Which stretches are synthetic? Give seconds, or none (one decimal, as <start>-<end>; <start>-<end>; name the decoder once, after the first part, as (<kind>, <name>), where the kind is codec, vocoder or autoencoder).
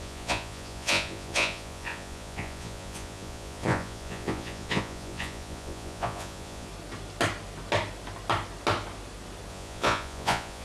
0.0-6.7 (vocoder, Vocos); 9.5-10.6